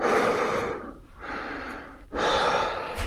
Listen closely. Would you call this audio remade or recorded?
recorded